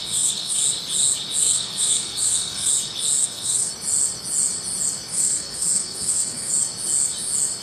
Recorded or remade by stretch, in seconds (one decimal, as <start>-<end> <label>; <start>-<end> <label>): 0.0-0.6 remade; 0.6-1.4 recorded; 1.4-2.7 remade; 2.7-3.2 recorded; 3.2-3.7 remade; 3.7-5.1 recorded; 5.1-6.5 remade; 6.5-7.6 recorded